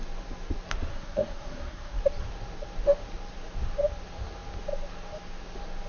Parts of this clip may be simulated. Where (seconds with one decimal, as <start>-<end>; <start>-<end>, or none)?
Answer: 0.9-2.0